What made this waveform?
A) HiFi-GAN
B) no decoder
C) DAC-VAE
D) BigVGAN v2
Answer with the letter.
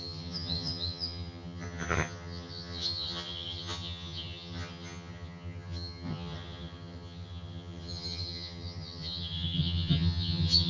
A